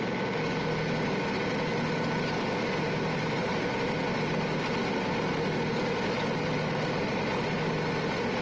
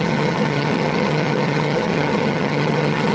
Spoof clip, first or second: second